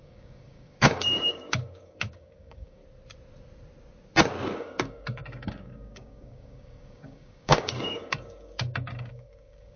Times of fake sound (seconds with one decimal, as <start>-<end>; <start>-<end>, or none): 0.0-2.8; 4.6-9.8